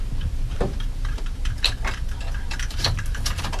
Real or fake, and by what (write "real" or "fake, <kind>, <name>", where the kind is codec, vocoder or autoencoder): fake, vocoder, BigVGAN v2